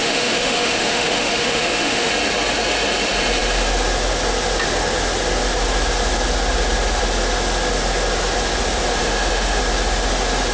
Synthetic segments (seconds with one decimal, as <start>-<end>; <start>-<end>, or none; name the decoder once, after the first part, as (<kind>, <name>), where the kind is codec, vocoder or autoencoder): 0.0-2.1 (autoencoder, DAC-VAE); 9.0-9.6